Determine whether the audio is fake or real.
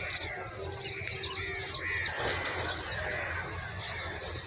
real